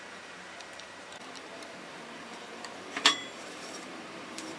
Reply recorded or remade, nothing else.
remade